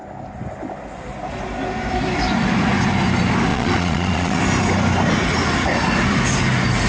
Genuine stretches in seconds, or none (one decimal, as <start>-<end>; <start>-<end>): 0.0-3.5; 4.4-6.9